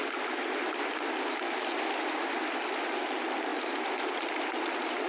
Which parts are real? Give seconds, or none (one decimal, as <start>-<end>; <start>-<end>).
0.0-5.1

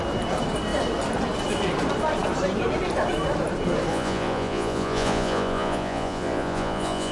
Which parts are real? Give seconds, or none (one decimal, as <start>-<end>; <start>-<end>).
0.0-3.9

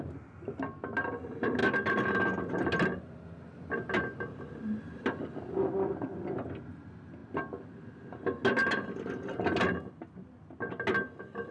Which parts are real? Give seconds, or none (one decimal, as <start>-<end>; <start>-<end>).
0.0-11.5